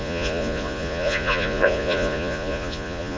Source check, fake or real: fake